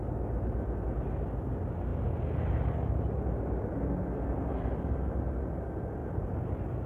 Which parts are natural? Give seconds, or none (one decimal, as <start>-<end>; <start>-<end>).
0.0-6.9